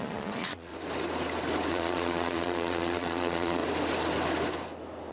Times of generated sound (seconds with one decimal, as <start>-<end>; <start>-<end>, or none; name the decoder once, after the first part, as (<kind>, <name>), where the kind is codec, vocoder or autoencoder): 0.0-0.7 (vocoder, Vocos); 1.7-3.6